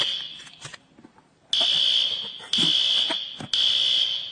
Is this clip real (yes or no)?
yes